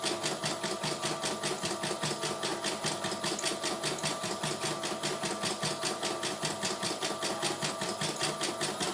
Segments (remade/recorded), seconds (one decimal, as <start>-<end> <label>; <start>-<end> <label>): 0.0-8.9 recorded